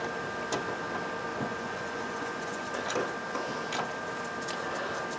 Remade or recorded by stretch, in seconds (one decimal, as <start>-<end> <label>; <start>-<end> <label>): 0.0-1.3 recorded; 1.3-2.7 remade; 2.7-5.2 recorded